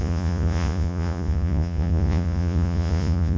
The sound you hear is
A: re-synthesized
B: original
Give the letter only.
A